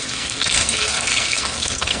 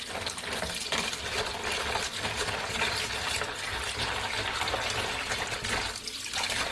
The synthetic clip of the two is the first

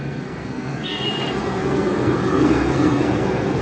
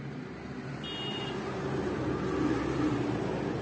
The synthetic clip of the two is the first